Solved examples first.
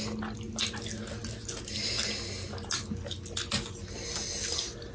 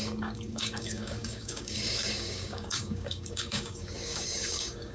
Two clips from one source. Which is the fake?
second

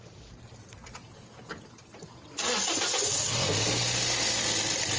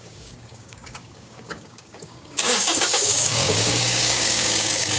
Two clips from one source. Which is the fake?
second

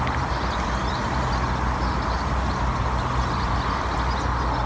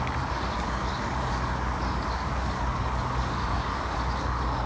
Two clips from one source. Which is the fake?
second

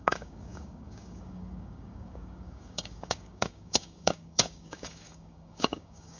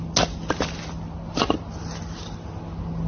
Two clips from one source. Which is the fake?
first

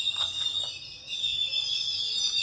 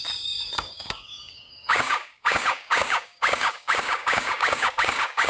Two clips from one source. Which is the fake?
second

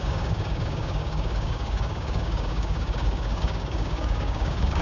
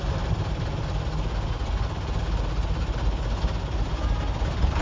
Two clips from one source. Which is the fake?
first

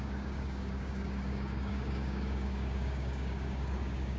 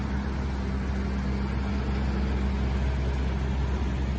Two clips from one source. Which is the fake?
first